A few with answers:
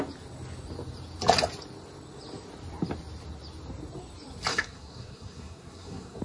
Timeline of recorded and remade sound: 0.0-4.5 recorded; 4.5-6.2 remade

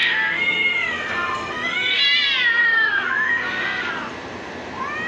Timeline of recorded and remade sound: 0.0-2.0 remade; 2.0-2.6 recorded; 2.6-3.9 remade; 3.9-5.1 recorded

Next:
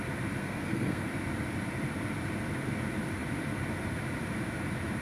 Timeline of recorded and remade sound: 0.0-0.4 recorded; 0.4-1.1 remade; 1.1-5.0 recorded

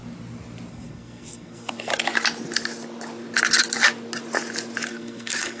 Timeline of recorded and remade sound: 0.0-0.7 recorded; 0.7-1.9 remade; 1.9-4.9 recorded; 4.9-5.6 remade